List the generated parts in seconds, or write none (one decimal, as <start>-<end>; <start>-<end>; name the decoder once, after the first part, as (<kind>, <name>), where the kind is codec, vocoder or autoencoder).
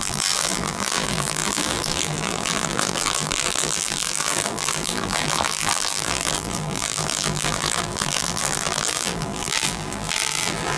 0.0-10.8 (vocoder, BigVGAN v2)